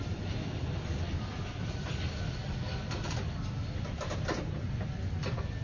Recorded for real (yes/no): no